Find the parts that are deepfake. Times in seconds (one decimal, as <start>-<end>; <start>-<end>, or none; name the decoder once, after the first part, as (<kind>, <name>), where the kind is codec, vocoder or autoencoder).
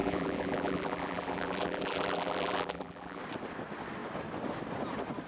0.0-3.2 (vocoder, BigVGAN v2)